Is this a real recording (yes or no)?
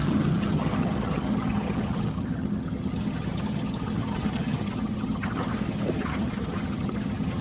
no